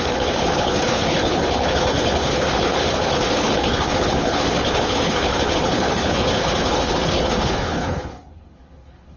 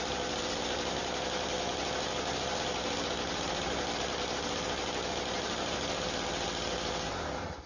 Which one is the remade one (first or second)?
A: first